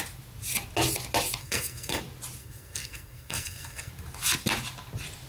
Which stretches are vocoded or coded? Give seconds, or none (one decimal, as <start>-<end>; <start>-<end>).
1.4-2.0; 2.4-3.9